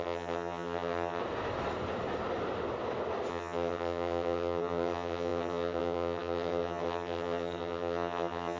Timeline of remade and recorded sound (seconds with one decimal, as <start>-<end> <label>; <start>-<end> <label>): 0.0-1.2 remade; 1.2-3.3 recorded; 3.3-8.6 remade